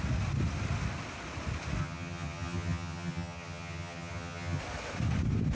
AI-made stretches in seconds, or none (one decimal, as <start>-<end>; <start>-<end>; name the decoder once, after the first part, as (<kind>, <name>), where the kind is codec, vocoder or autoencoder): 1.8-4.6 (vocoder, HiFi-GAN)